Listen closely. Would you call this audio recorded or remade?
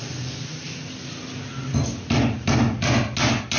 recorded